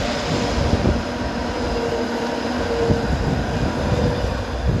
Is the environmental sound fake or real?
real